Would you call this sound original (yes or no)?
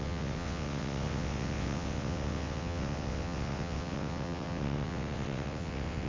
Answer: no